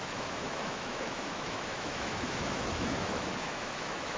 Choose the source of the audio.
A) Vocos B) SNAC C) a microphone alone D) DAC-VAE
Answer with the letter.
D